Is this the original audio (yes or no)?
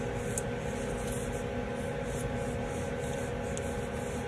yes